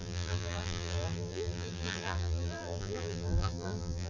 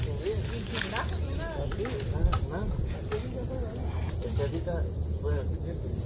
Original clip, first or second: second